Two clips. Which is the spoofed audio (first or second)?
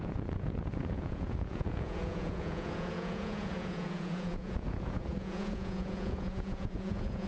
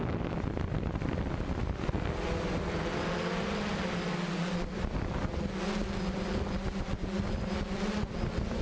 first